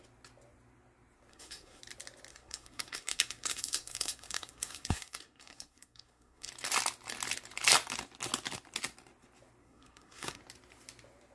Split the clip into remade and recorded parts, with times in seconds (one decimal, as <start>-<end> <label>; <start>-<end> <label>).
0.0-1.3 recorded; 1.3-1.8 remade; 1.8-2.3 recorded; 2.3-6.5 remade; 6.5-9.6 recorded; 9.6-10.4 remade; 10.4-11.3 recorded

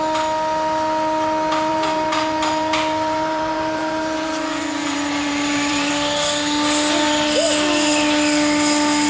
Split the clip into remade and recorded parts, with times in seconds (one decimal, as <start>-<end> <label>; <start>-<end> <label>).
0.0-1.7 recorded; 1.7-5.9 remade; 5.9-9.1 recorded

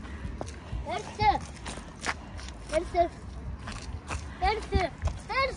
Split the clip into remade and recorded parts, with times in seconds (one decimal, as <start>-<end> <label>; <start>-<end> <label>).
0.0-5.6 recorded

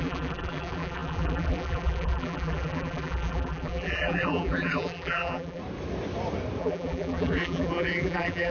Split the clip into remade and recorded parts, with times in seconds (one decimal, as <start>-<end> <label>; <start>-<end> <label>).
0.0-5.6 remade; 5.6-6.6 recorded; 6.6-8.5 remade

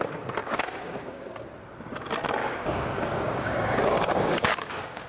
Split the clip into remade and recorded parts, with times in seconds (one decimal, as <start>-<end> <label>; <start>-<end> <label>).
0.0-0.4 recorded; 0.4-1.4 remade; 1.4-2.4 recorded; 2.4-5.1 remade

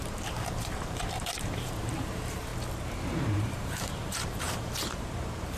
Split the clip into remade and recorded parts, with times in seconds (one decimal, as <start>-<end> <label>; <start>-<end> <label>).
0.0-2.5 remade; 2.5-3.0 recorded; 3.0-5.6 remade